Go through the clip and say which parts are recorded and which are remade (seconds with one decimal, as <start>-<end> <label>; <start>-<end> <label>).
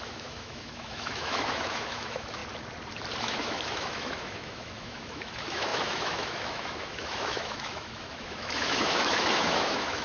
0.0-2.4 remade; 2.4-3.2 recorded; 3.2-10.0 remade